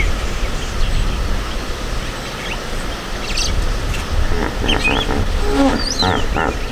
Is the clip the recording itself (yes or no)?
yes